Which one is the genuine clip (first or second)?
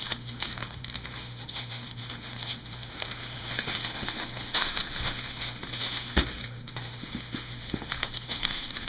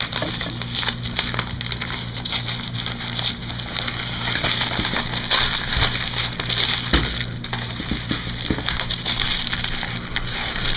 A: second